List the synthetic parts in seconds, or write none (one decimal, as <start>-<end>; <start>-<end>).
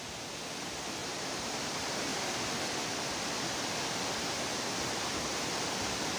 1.0-1.6